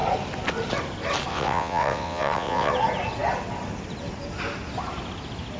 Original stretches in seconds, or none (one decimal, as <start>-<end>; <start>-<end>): 0.0-1.3; 2.7-5.6